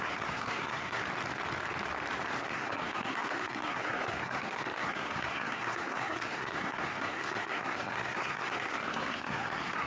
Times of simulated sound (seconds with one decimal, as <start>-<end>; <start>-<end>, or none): 0.0-1.0; 2.4-9.9

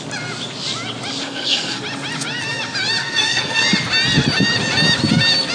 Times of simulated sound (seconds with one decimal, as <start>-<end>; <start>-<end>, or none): 1.2-1.8; 3.0-3.6

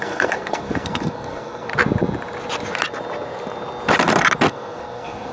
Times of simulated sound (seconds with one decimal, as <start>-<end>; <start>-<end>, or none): 0.0-1.7; 4.5-5.3